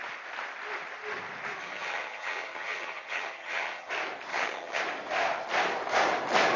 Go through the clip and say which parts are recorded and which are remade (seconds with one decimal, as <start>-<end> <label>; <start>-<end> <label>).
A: 0.0-1.6 recorded; 1.6-3.9 remade; 3.9-4.3 recorded; 4.3-4.8 remade; 4.8-6.6 recorded